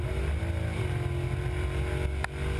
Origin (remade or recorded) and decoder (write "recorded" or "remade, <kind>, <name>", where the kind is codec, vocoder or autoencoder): recorded